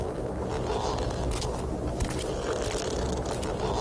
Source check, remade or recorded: recorded